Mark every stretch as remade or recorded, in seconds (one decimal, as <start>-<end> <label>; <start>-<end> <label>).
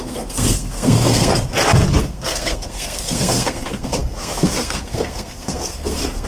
0.0-1.3 remade; 1.3-2.0 recorded; 2.0-6.3 remade